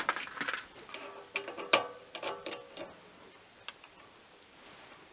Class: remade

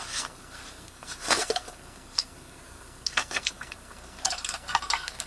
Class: remade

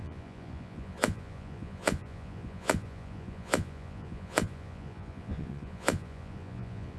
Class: remade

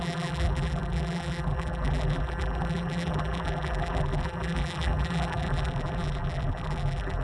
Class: remade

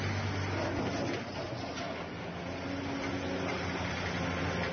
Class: recorded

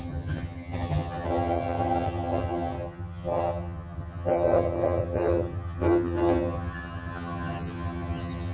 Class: remade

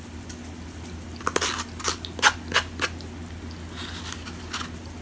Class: recorded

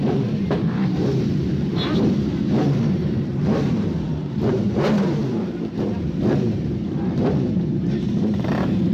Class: remade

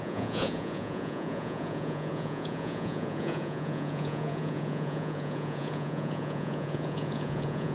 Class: remade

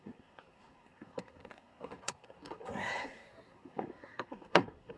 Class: remade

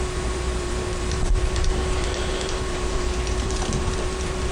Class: remade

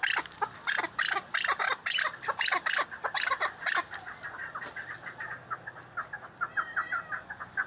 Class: remade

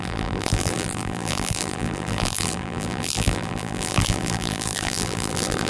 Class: remade